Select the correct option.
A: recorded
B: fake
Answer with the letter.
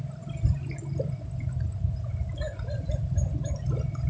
A